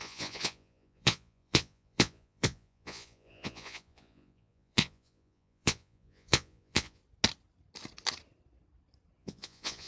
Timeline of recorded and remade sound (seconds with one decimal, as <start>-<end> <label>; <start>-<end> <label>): 0.0-7.0 remade; 7.0-9.2 recorded; 9.2-9.9 remade